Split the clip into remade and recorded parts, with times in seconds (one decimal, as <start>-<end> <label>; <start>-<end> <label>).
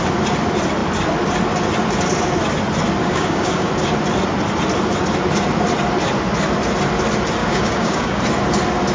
0.0-3.0 recorded; 3.0-3.7 remade; 3.7-7.4 recorded; 7.4-8.2 remade; 8.2-8.9 recorded